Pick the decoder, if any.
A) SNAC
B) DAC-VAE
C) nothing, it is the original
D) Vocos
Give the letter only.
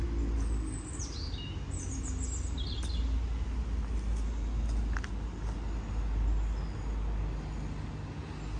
C